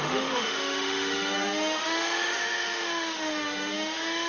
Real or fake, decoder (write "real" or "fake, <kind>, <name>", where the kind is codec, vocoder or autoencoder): fake, autoencoder, DAC-VAE